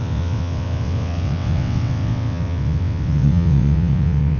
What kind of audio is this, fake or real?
fake